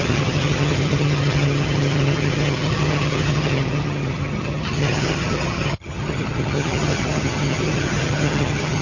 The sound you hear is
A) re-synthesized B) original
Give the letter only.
A